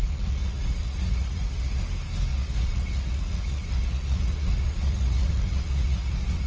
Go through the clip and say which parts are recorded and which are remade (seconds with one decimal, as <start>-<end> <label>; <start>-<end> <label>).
0.0-1.8 remade; 1.8-2.3 recorded; 2.3-6.5 remade